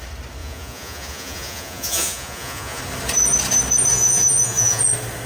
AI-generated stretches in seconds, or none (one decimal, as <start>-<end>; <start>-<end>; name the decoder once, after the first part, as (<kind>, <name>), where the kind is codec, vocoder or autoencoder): 0.4-2.8 (vocoder, Vocos); 3.9-4.8